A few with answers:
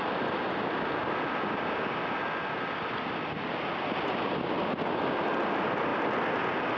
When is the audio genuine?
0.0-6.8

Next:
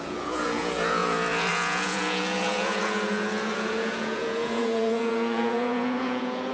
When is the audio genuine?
none

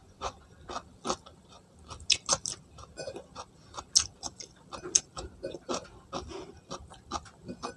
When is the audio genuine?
0.5-7.8

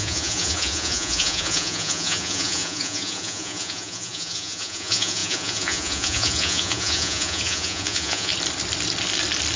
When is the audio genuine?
8.3-9.6

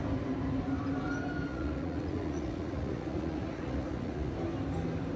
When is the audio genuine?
0.0-1.5; 4.3-5.2

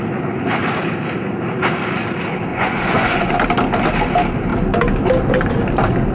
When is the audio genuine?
0.0-2.5; 3.3-6.1

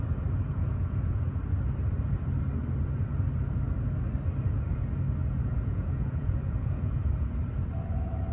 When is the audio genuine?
0.0-0.5; 1.4-5.2; 7.1-8.3